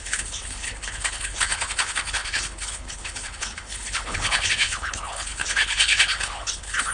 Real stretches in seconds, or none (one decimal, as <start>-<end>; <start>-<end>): none